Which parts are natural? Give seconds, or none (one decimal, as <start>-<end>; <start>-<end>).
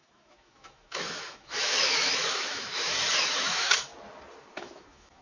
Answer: 3.9-4.6